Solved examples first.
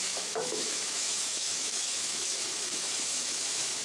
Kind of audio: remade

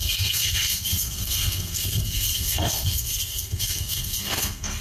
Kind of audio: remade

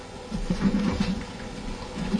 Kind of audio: remade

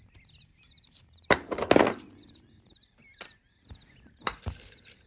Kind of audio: recorded